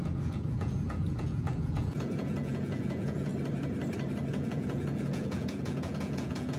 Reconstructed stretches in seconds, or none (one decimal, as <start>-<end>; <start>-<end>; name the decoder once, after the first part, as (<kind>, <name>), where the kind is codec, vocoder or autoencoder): 0.0-3.3 (vocoder, Vocos); 4.3-6.6